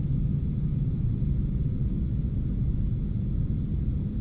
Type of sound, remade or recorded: remade